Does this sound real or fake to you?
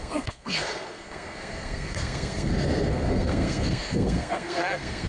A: fake